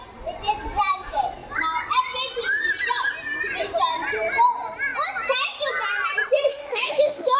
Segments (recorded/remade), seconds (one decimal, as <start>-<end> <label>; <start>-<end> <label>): 0.0-6.5 recorded; 6.5-7.4 remade